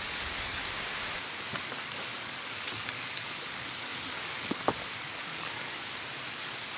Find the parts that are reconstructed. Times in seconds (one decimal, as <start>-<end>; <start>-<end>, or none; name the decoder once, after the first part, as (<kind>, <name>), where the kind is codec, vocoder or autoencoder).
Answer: 0.0-0.6 (codec, DAC); 1.6-5.8; 6.3-6.8